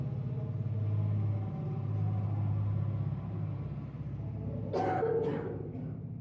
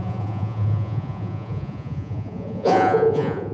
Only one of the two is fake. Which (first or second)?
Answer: second